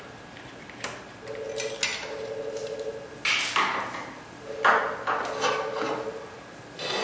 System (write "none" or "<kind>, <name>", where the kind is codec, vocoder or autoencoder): none